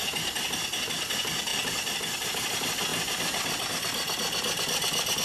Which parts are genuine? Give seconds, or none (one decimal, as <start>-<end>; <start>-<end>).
0.0-1.5; 2.5-2.9; 3.7-5.2